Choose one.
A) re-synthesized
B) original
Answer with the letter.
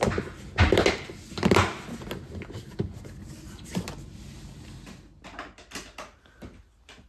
B